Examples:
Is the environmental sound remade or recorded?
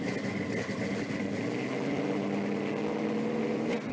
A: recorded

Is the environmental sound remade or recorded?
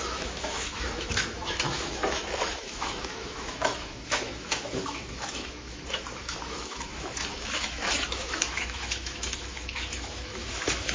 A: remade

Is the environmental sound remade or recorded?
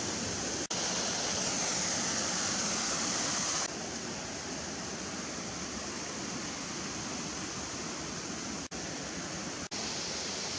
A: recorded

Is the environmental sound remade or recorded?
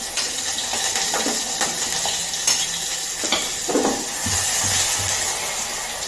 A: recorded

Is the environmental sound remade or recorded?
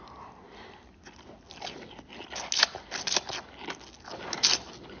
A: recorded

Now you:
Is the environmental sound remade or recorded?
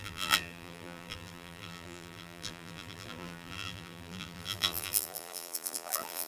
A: remade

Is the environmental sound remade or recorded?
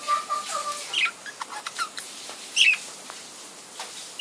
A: recorded